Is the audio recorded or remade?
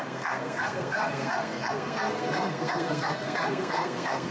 remade